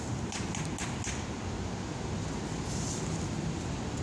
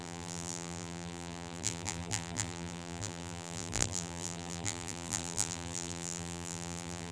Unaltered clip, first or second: first